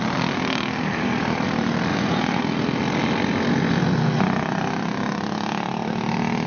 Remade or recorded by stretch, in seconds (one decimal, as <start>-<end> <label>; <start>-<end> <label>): 0.0-1.9 recorded; 1.9-2.4 remade; 2.4-6.5 recorded